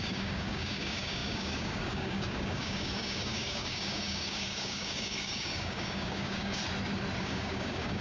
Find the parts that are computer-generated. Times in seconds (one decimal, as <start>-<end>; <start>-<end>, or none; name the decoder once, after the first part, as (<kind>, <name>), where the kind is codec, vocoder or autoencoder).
0.0-6.6 (codec, DAC); 7.2-8.0